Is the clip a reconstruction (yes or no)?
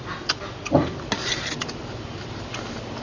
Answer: no